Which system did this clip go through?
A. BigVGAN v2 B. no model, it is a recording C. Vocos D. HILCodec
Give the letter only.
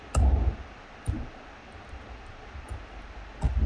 B